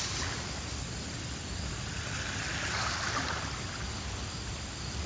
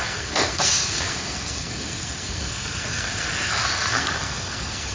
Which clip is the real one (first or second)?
first